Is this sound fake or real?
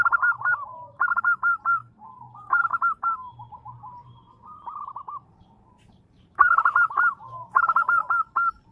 fake